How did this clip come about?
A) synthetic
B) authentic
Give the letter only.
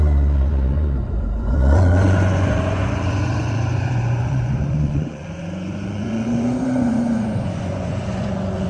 A